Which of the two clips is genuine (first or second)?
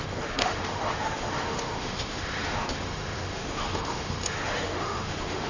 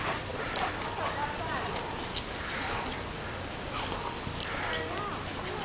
second